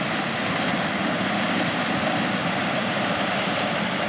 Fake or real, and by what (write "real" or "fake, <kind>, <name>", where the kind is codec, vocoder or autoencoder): real